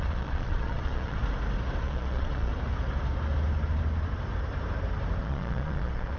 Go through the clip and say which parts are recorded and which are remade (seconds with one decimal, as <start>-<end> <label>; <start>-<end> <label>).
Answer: 0.0-1.2 remade; 1.2-1.8 recorded; 1.8-2.5 remade; 2.5-5.2 recorded; 5.2-6.2 remade